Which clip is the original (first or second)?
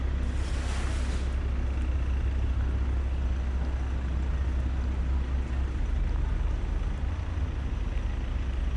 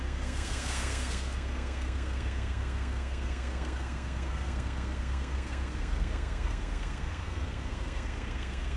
first